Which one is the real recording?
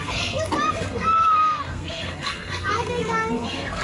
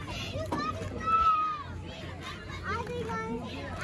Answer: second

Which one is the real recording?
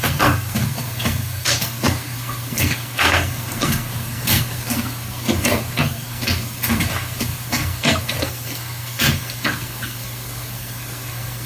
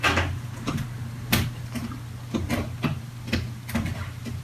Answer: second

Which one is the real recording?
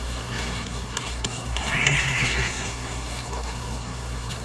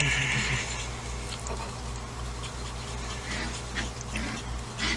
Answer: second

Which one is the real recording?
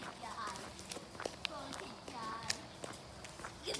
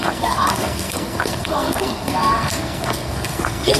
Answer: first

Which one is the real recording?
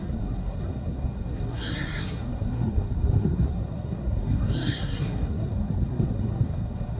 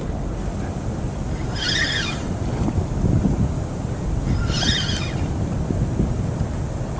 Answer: second